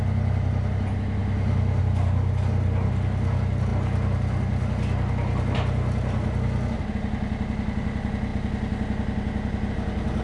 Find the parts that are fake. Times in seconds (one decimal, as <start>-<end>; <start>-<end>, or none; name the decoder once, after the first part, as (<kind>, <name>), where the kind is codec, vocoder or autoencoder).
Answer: none